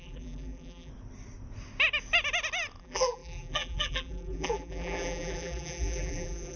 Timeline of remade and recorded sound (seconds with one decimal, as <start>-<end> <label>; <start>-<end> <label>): 0.0-0.9 remade; 0.9-2.8 recorded; 2.8-6.6 remade